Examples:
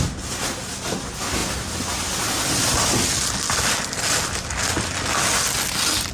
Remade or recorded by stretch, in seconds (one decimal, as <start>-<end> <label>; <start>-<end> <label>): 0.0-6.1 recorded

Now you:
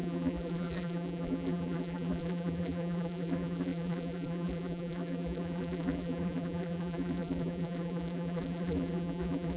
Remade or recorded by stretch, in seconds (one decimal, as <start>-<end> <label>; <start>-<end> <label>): 0.0-9.6 remade

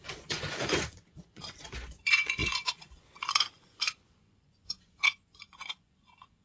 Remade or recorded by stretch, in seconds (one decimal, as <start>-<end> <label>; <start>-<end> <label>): 0.0-6.4 remade